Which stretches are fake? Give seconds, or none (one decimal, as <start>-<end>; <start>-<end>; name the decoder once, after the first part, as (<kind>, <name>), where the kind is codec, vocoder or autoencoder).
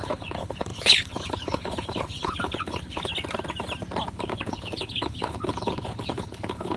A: 0.0-3.1 (codec, HILCodec); 4.1-6.8